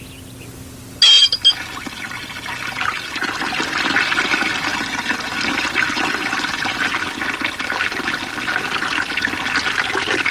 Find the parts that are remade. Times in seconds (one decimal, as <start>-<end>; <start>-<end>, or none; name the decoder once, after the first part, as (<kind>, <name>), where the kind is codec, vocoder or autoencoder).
none